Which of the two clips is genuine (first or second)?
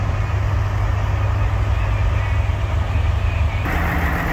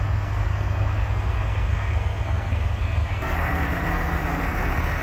first